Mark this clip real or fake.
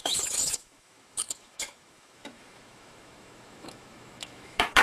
fake